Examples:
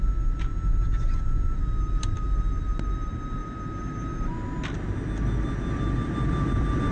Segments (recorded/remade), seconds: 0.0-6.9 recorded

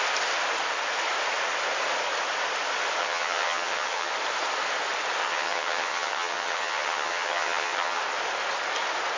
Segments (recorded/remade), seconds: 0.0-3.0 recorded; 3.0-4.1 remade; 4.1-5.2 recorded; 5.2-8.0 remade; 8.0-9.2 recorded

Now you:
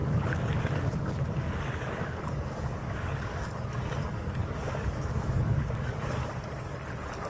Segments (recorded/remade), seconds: 0.0-6.2 remade; 6.2-7.3 recorded

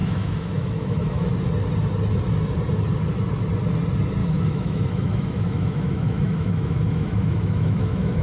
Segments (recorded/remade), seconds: 0.0-1.3 remade; 1.3-4.2 recorded; 4.2-8.2 remade

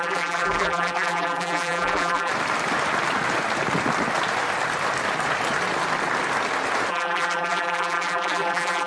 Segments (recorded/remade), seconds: 0.0-2.3 remade; 2.3-6.9 recorded; 6.9-8.9 remade